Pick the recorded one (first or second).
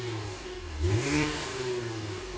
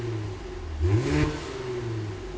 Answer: second